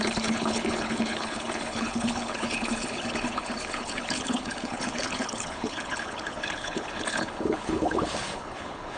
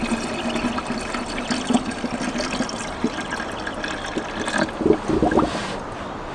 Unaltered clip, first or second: second